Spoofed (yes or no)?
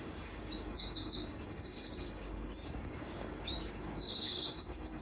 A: yes